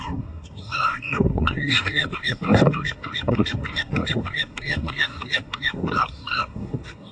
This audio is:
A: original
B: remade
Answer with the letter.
B